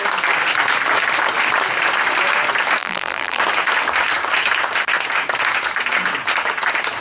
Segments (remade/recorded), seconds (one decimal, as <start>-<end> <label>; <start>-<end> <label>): 0.0-2.8 recorded; 2.8-3.4 remade; 3.4-7.0 recorded